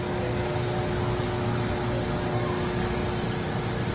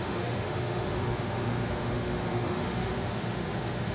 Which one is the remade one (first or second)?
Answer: second